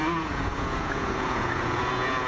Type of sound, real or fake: fake